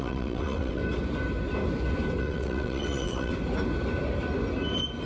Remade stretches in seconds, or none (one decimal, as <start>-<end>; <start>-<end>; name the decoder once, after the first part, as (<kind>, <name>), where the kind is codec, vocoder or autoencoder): 0.0-0.8 (vocoder, WaveNeXt); 2.2-3.3

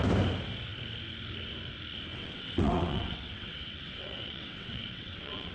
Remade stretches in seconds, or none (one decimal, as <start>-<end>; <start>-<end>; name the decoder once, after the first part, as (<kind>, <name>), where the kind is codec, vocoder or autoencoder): 2.1-5.5 (vocoder, WaveNeXt)

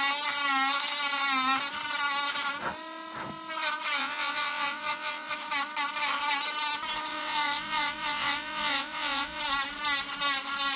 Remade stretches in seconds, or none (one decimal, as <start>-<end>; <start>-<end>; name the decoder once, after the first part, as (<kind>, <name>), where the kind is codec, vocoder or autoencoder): 4.0-5.3 (vocoder, WaveNeXt); 7.1-9.4

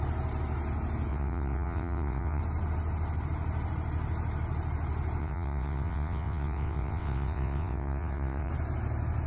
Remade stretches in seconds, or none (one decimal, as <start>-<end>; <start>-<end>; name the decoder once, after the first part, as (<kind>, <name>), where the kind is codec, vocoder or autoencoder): 1.1-2.4 (vocoder, WaveNeXt); 5.2-8.5

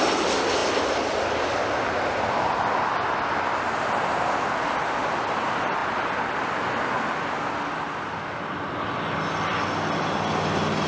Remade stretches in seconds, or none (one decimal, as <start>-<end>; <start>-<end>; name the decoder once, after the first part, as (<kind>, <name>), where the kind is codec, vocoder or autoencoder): none

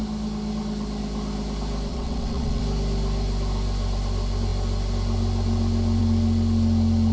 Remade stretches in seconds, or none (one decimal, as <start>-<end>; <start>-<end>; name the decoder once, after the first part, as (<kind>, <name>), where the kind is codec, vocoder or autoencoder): 1.9-2.6 (vocoder, WaveNeXt)

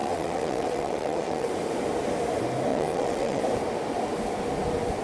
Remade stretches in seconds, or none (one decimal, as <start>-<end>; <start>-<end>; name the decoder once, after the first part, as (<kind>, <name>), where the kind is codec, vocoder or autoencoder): 0.0-1.5 (vocoder, WaveNeXt); 2.7-3.4